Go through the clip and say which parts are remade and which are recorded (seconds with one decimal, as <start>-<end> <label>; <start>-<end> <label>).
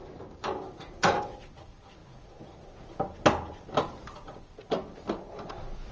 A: 0.0-5.9 recorded